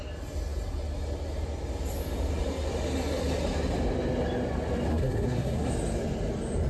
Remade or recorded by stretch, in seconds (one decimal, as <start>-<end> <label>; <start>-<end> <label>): 0.0-4.9 recorded; 4.9-5.7 remade; 5.7-6.7 recorded

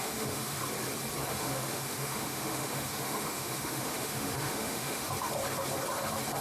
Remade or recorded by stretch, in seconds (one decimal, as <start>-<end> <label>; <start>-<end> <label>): 0.0-0.6 remade; 0.6-1.3 recorded; 1.3-5.1 remade; 5.1-6.4 recorded

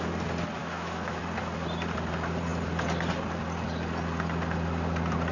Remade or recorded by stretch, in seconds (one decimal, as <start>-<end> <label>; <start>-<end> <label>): 0.0-0.6 recorded; 0.6-1.2 remade; 1.2-5.3 recorded

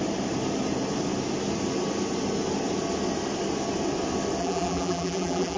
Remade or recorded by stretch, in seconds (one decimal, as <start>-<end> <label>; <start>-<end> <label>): 0.0-4.4 recorded; 4.4-5.6 remade